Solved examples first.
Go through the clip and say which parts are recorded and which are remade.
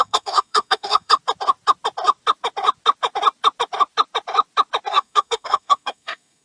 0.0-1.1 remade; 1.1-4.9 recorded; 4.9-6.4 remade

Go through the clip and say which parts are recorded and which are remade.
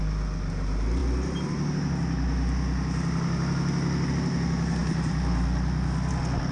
0.0-6.5 recorded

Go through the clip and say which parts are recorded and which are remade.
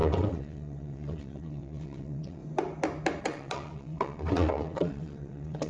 0.0-2.4 remade; 2.4-3.2 recorded; 3.2-5.7 remade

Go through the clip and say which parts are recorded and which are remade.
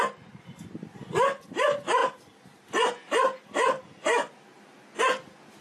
0.0-5.6 recorded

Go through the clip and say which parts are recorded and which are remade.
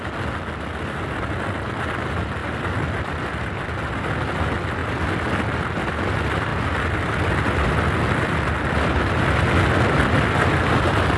0.0-11.2 recorded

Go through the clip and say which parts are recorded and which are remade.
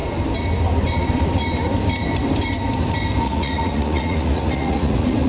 0.0-3.2 recorded; 3.2-5.3 remade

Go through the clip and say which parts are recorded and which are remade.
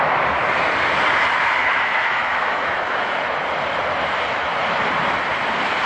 0.0-1.6 recorded; 1.6-3.2 remade; 3.2-5.9 recorded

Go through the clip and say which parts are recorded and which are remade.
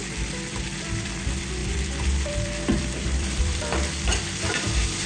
0.0-5.1 remade